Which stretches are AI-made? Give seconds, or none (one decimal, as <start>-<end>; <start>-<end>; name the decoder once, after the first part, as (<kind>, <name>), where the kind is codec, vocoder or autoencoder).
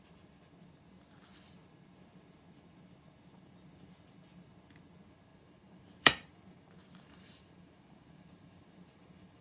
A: 5.3-9.4 (vocoder, BigVGAN v2)